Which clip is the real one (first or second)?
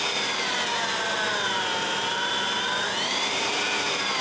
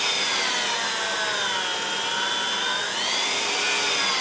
second